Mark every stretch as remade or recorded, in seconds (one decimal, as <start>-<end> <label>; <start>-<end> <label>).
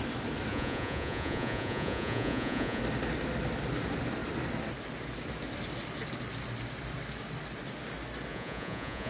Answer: 0.0-0.5 recorded; 0.5-2.8 remade; 2.8-8.3 recorded; 8.3-9.1 remade